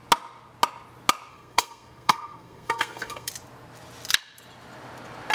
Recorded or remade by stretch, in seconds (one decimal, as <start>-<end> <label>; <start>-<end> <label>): 0.0-1.3 recorded; 1.3-3.3 remade; 3.3-5.3 recorded